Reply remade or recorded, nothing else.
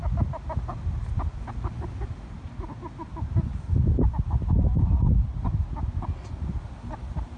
recorded